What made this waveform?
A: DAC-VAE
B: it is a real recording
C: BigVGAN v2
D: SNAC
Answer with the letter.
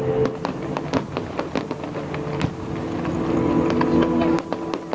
B